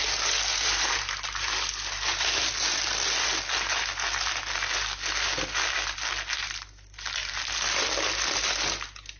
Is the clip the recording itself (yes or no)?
yes